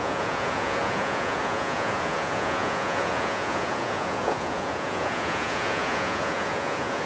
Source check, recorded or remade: remade